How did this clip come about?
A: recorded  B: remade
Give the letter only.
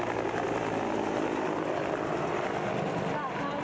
A